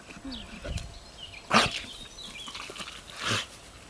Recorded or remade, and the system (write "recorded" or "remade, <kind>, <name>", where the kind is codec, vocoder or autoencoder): recorded